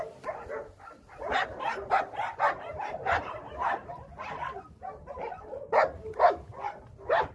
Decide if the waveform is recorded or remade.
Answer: recorded